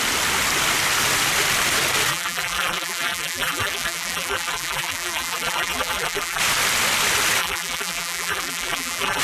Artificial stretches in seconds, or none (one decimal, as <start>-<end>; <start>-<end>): 2.1-6.4; 7.4-9.2